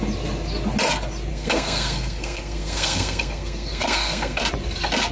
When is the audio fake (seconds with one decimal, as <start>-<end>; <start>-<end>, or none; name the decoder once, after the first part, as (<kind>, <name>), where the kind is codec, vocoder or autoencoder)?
1.3-4.4 (codec, SNAC)